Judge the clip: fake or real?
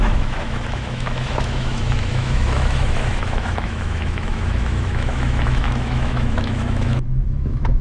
fake